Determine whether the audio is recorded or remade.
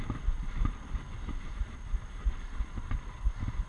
remade